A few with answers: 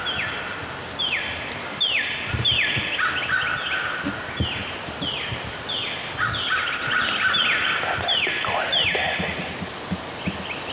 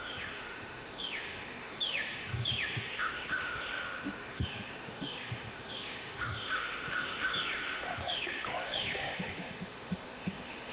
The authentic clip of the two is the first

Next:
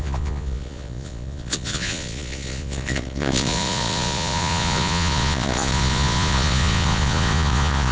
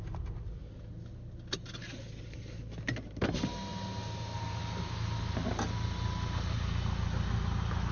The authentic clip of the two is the second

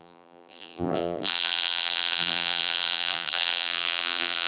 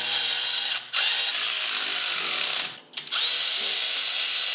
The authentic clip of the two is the second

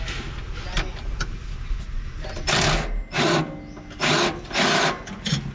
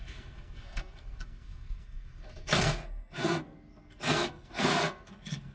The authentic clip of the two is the first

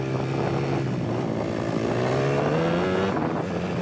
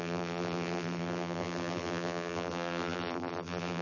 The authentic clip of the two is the first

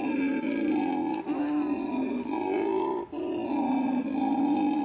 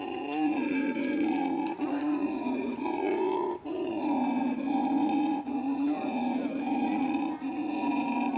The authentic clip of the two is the first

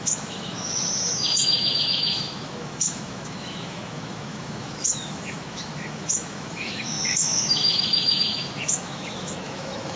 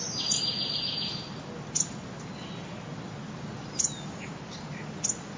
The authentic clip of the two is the second